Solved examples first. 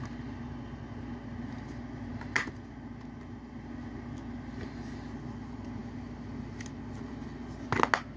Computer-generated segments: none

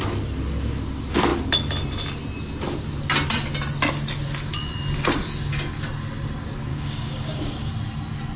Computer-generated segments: 6.7-7.7 (codec, DAC)